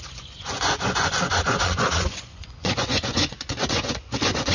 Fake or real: fake